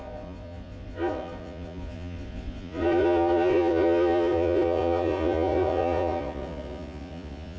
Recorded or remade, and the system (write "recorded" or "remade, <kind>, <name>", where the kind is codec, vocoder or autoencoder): remade, vocoder, Vocos